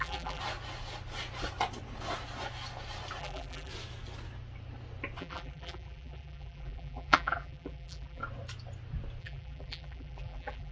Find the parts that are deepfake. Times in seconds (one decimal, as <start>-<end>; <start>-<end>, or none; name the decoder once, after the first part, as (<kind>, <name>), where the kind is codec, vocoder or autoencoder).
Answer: 0.0-0.4 (vocoder, BigVGAN v2); 3.2-3.7; 5.2-8.2; 9.2-10.7